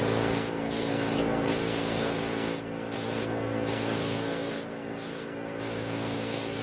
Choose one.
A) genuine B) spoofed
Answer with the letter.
B